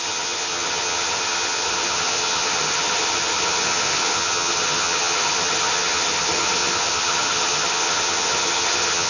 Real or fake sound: fake